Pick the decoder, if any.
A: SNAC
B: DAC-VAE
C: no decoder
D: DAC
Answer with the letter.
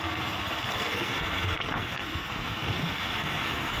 A